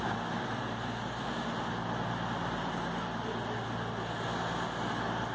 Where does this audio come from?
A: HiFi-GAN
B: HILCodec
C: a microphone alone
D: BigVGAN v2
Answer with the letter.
C